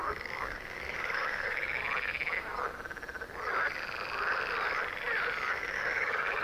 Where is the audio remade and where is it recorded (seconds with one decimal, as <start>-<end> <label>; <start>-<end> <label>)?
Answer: 0.0-1.8 remade; 1.8-5.6 recorded; 5.6-6.4 remade